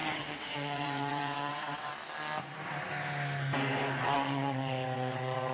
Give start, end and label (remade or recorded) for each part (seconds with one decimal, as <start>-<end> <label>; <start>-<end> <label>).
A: 0.0-1.9 remade; 1.9-4.0 recorded; 4.0-5.5 remade